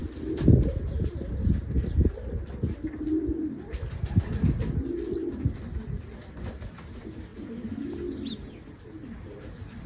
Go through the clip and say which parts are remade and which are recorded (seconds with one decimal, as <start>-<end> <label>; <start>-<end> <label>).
0.0-9.9 recorded